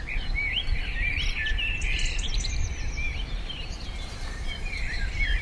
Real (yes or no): no